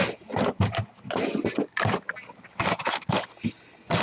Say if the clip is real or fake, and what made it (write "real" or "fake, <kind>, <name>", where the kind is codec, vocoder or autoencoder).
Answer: real